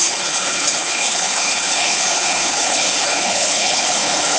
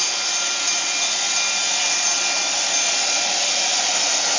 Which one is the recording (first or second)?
second